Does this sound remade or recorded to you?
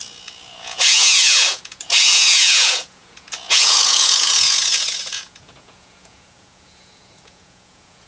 remade